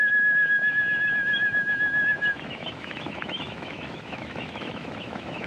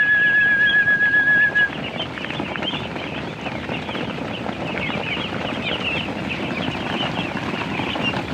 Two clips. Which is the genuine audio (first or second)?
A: second